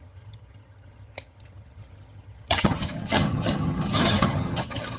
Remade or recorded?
remade